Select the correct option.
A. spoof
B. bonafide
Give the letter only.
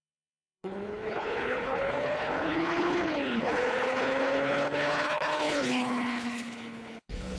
A